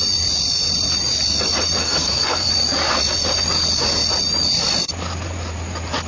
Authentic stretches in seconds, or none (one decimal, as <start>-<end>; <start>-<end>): 0.0-1.8; 2.5-6.1